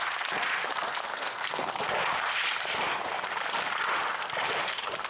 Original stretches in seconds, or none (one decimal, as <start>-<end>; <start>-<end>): 0.0-1.1; 1.7-5.1